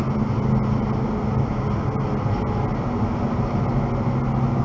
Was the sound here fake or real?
real